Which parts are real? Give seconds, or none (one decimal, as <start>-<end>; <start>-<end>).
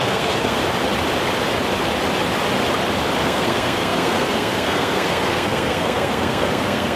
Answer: 0.6-3.2